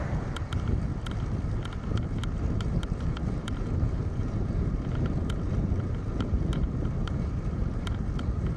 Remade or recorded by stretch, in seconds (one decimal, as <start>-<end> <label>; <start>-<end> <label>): 0.0-0.9 remade; 0.9-2.4 recorded; 2.4-8.6 remade